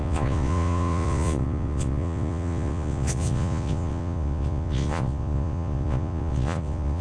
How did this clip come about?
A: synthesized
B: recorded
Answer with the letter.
A